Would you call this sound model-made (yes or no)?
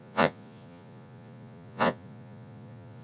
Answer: yes